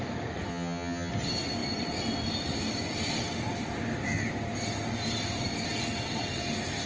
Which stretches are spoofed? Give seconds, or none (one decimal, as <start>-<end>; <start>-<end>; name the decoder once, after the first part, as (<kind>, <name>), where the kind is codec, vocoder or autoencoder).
0.5-1.1 (vocoder, HiFi-GAN)